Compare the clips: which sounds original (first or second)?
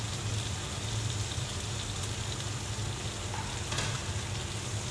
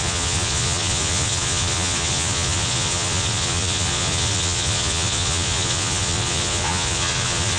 first